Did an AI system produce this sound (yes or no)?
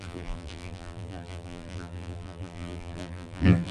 yes